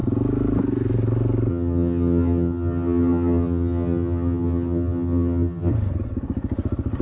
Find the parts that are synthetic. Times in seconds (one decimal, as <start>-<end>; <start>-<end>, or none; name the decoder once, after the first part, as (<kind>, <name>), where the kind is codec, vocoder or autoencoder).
1.5-5.7 (vocoder, HiFi-GAN)